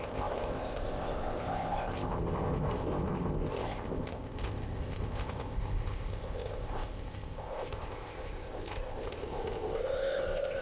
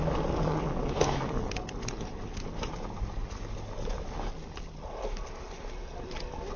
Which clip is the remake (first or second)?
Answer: first